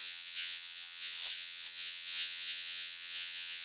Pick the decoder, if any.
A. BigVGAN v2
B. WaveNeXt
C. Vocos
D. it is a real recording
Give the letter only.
B